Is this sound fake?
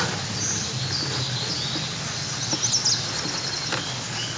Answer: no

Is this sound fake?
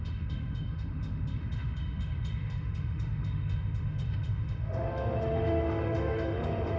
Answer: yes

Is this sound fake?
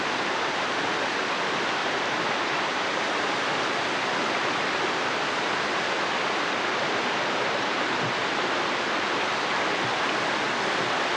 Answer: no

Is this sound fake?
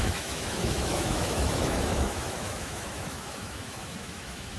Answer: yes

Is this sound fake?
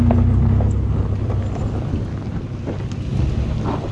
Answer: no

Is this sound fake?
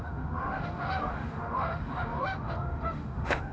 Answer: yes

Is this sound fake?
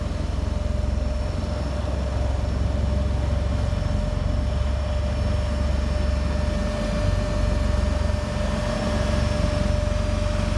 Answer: no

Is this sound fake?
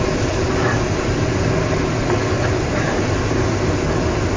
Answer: no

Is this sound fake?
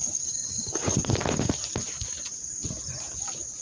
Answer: no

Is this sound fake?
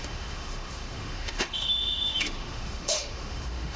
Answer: yes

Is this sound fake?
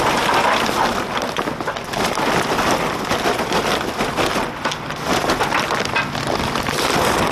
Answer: no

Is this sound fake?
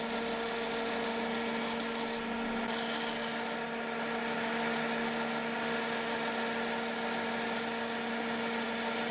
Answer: no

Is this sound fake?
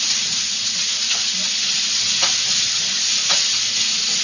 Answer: no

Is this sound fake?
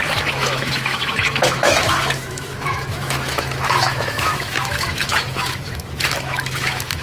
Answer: yes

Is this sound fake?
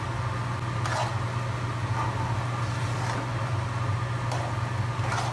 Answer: no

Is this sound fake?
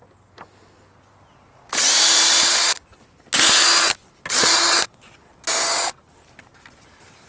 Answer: no